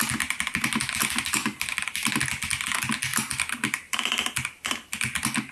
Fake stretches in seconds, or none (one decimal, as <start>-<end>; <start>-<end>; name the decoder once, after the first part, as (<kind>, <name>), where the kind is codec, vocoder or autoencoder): 1.4-2.2 (vocoder, BigVGAN v2); 3.1-5.0